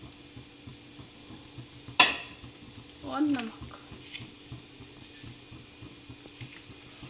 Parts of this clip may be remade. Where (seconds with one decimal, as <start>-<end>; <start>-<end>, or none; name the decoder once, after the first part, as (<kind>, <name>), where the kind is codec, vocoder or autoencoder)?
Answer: none